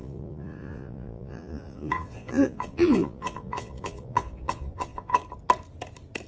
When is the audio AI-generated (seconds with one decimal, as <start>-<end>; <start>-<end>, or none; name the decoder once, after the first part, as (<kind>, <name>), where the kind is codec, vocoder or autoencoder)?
0.0-5.2 (vocoder, Vocos)